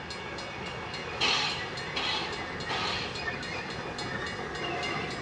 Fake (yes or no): no